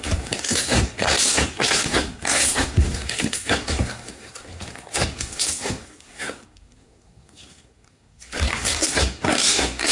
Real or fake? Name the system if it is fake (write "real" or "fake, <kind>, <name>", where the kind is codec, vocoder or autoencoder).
fake, codec, SNAC